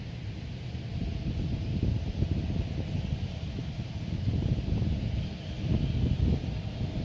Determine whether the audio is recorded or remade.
recorded